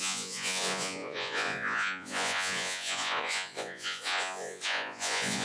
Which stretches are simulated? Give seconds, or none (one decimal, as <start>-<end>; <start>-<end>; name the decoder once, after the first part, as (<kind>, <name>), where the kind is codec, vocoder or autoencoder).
0.0-5.4 (vocoder, Vocos)